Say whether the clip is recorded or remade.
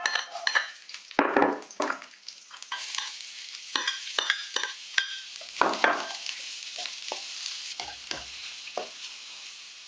recorded